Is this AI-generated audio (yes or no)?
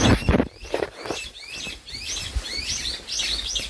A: no